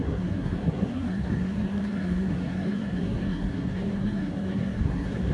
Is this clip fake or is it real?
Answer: fake